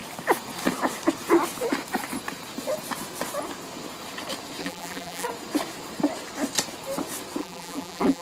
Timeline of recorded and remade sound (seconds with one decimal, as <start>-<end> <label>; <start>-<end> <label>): 0.0-4.6 recorded; 4.6-5.3 remade; 5.3-7.4 recorded; 7.4-8.2 remade

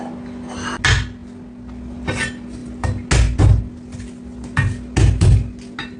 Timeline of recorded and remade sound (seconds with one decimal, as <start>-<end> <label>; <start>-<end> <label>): 0.0-6.0 recorded

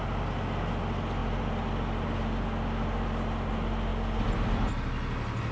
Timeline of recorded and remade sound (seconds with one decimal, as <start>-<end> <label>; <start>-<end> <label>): 0.0-5.5 recorded